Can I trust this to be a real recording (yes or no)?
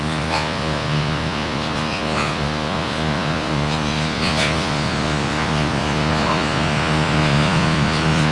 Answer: no